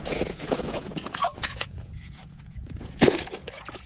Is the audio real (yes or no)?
no